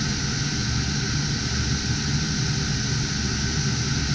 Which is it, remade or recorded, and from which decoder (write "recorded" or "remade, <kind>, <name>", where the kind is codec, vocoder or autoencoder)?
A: recorded